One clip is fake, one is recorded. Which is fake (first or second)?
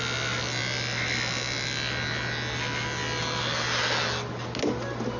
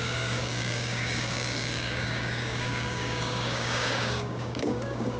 second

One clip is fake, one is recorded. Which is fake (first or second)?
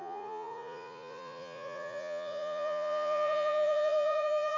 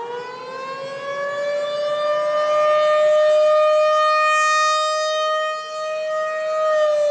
first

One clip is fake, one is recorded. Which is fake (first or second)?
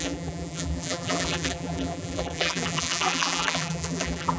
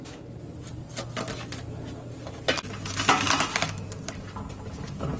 first